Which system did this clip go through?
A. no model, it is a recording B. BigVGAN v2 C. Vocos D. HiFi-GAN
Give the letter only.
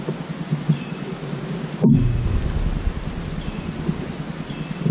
A